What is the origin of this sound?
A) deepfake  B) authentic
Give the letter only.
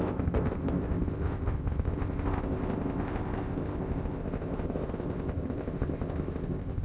A